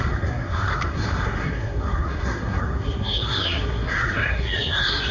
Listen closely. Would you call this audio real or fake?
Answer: fake